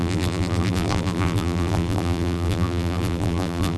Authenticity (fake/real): fake